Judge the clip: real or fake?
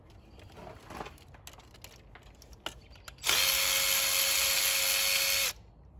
real